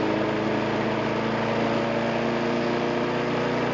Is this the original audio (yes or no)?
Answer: yes